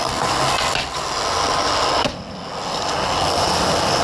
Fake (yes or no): no